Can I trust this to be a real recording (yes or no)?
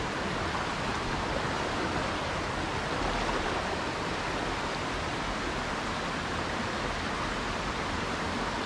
yes